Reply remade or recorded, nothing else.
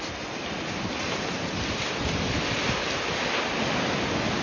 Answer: recorded